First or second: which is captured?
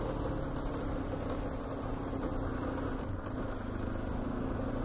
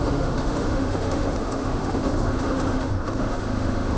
first